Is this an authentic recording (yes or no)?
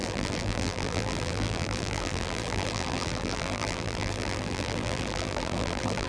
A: no